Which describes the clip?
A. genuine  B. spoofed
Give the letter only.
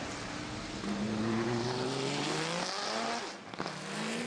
A